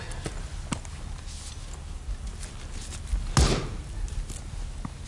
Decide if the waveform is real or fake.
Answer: real